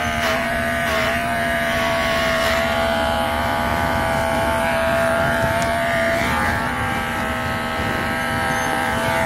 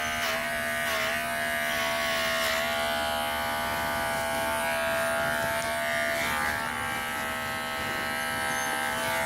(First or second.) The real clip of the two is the second